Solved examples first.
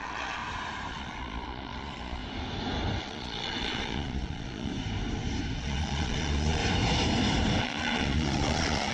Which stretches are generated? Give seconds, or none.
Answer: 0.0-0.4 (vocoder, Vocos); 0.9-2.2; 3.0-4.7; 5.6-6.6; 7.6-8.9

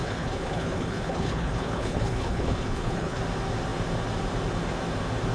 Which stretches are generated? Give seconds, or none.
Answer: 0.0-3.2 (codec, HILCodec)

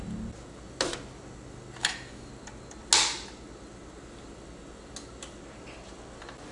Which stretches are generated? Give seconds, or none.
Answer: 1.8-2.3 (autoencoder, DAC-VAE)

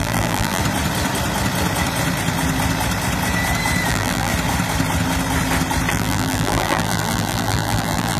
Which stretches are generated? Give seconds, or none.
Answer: 0.0-0.6 (vocoder, BigVGAN v2); 3.9-4.3; 5.9-8.2

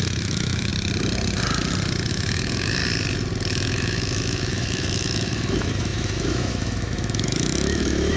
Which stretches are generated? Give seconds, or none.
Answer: 0.0-0.7 (autoencoder, DAC-VAE); 2.1-2.8; 3.5-8.2

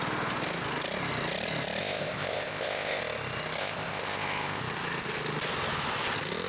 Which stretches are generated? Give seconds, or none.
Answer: 1.8-3.0 (codec, ZipCodec); 3.6-4.6

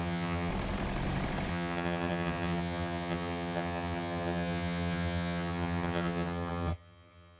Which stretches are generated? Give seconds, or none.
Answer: 0.0-0.5 (vocoder, HiFi-GAN); 1.5-7.4

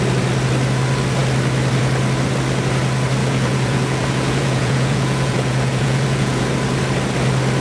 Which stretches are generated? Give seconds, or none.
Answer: 3.2-6.5 (vocoder, Vocos)